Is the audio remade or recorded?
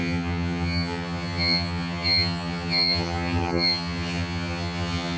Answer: remade